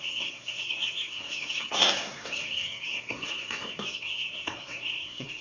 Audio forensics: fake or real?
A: fake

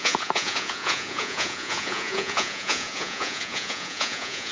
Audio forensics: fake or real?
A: fake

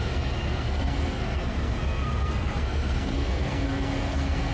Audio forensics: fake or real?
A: fake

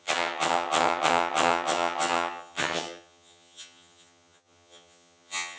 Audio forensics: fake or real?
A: fake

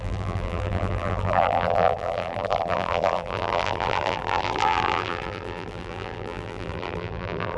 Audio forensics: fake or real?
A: fake